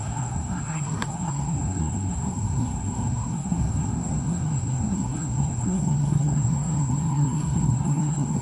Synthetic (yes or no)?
yes